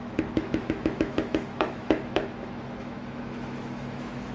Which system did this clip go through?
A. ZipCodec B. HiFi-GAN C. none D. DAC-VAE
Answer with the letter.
D